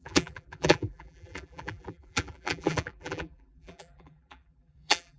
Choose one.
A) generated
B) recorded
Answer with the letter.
A